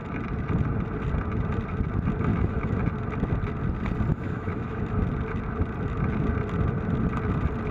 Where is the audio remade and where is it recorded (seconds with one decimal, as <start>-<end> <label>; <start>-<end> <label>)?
0.0-2.3 recorded; 2.3-2.8 remade; 2.8-4.1 recorded; 4.1-4.8 remade; 4.8-7.7 recorded